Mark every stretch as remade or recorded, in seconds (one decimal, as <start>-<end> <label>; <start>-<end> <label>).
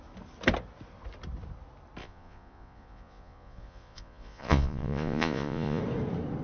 0.0-2.0 recorded; 2.0-5.8 remade; 5.8-6.4 recorded